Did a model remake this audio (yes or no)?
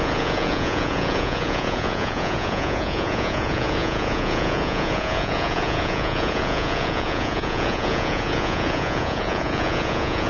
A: yes